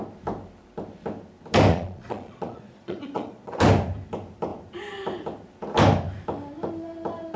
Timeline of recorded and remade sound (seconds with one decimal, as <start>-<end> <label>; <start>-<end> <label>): 0.0-1.7 recorded; 1.7-3.6 remade; 3.6-7.4 recorded

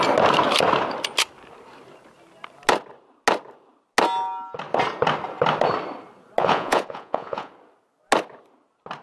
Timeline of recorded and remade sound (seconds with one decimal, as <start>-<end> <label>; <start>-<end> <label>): 0.0-6.4 recorded; 6.4-7.5 remade; 7.5-9.0 recorded

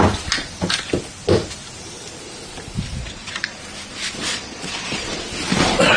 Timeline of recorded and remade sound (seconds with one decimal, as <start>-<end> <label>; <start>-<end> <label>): 0.0-3.0 recorded; 3.0-3.6 remade; 3.6-4.3 recorded; 4.3-5.2 remade; 5.2-6.0 recorded

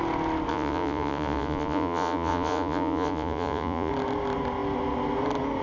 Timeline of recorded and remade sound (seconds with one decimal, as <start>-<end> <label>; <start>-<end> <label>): 0.0-0.5 recorded; 0.5-3.9 remade; 3.9-5.6 recorded

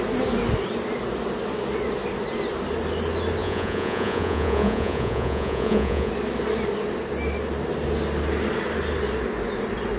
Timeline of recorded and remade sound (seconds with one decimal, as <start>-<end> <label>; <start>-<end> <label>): 0.0-3.4 recorded; 3.4-6.1 remade; 6.1-10.0 recorded

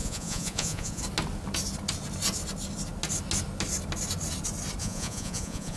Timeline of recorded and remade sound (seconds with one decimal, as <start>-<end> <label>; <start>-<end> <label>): 0.0-1.0 remade; 1.0-4.8 recorded; 4.8-5.8 remade

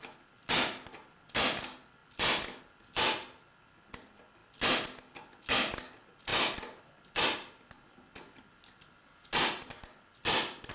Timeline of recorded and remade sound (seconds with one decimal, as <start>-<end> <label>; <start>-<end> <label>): 0.0-10.7 recorded

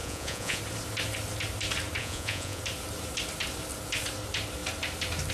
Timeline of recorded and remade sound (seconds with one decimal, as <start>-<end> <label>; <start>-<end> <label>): 0.0-0.6 remade; 0.6-2.0 recorded; 2.0-2.6 remade; 2.6-5.3 recorded